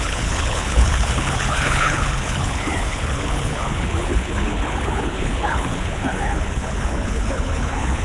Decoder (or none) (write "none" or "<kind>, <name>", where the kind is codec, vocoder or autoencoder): codec, HILCodec